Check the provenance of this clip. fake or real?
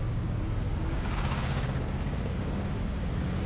fake